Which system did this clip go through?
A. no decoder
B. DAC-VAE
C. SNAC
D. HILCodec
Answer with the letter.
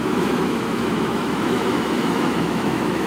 B